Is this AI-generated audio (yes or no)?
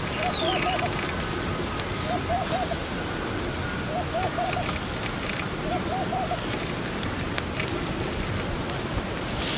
no